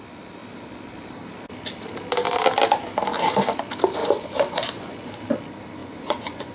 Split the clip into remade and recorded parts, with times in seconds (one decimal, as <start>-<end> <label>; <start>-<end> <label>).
0.0-4.0 recorded; 4.0-5.1 remade; 5.1-5.8 recorded; 5.8-6.5 remade